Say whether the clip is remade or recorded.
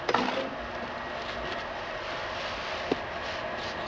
recorded